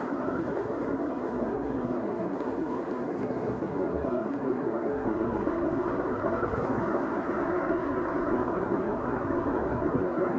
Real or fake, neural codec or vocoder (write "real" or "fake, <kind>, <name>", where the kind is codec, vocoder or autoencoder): fake, codec, SNAC